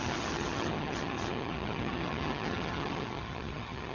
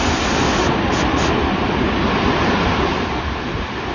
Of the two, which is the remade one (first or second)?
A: first